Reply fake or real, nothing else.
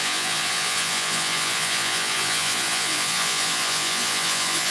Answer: fake